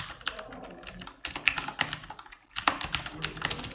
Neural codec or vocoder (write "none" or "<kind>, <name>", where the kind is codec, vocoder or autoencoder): none